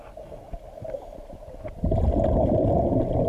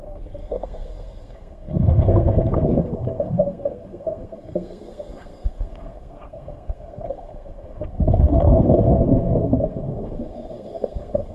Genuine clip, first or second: first